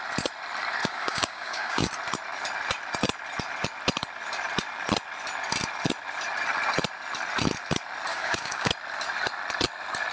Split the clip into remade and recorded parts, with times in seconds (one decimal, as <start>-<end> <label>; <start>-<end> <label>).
0.0-0.8 recorded; 0.8-1.9 remade; 1.9-8.1 recorded; 8.1-8.7 remade; 8.7-10.1 recorded